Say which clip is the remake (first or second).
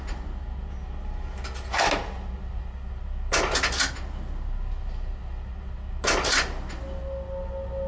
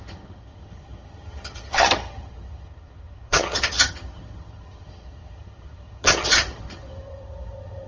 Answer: second